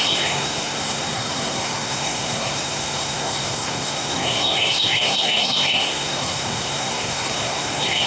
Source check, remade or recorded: remade